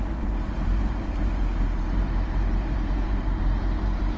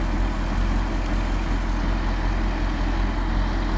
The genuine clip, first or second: second